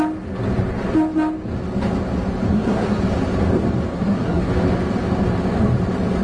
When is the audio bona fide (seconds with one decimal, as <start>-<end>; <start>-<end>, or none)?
0.0-2.5; 3.0-3.9; 4.5-6.2